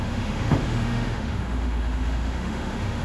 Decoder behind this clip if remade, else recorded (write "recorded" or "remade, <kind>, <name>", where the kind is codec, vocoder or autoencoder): remade, autoencoder, DAC-VAE